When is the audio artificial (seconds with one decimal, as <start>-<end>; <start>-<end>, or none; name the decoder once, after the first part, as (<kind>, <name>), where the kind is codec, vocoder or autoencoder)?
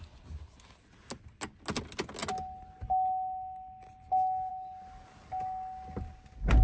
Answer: none